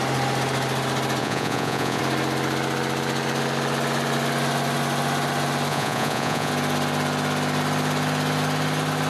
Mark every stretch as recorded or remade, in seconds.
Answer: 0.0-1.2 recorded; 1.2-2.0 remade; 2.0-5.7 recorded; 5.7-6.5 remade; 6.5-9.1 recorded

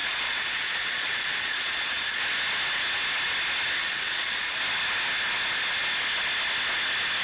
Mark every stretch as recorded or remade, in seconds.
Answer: 0.0-2.2 remade; 2.2-3.8 recorded; 3.8-4.6 remade; 4.6-7.2 recorded

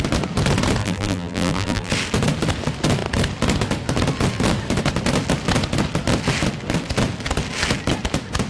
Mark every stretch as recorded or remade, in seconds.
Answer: 0.0-0.8 recorded; 0.8-1.9 remade; 1.9-8.5 recorded

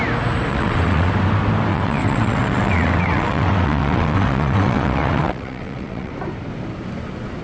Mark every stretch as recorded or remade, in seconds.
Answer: 0.0-0.5 recorded; 0.5-1.1 remade; 1.1-1.7 recorded; 1.7-6.1 remade; 6.1-7.4 recorded

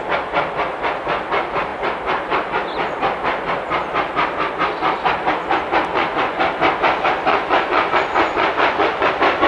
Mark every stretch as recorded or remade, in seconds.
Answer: 0.0-5.9 recorded; 5.9-6.4 remade; 6.4-7.3 recorded; 7.3-9.1 remade; 9.1-9.5 recorded

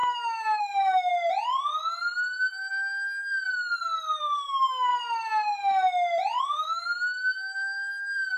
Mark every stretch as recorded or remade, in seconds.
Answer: 0.0-1.1 remade; 1.1-4.2 recorded; 4.2-4.9 remade; 4.9-6.4 recorded; 6.4-8.4 remade